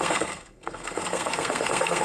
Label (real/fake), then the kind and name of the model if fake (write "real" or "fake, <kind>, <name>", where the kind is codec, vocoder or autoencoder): fake, codec, SNAC